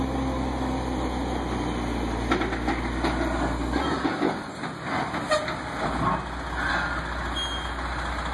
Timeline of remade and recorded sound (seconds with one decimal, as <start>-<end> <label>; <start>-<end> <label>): 0.0-8.3 recorded